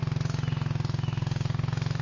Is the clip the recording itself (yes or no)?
yes